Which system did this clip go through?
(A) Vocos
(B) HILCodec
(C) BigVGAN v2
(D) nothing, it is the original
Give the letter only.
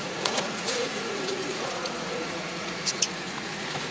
A